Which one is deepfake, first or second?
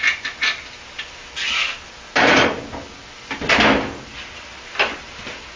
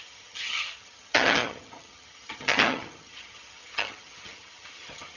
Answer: second